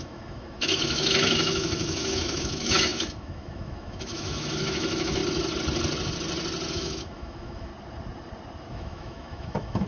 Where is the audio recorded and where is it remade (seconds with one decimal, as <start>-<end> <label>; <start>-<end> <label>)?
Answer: 0.0-5.2 remade; 5.2-6.7 recorded; 6.7-7.7 remade; 7.7-8.7 recorded; 8.7-9.9 remade